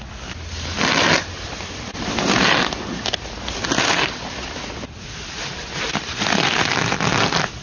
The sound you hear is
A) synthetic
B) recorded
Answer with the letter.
B